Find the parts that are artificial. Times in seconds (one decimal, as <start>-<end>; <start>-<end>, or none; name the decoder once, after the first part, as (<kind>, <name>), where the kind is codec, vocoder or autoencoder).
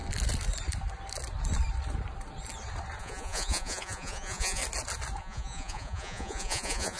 3.0-4.6 (vocoder, Vocos); 5.2-7.0